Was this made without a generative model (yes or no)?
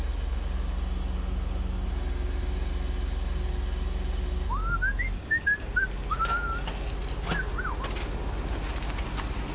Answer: yes